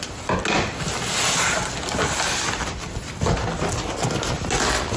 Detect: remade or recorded recorded